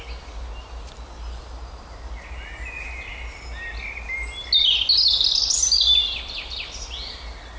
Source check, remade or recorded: recorded